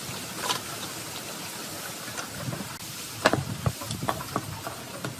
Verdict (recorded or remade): recorded